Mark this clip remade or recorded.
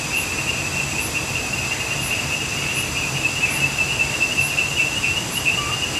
recorded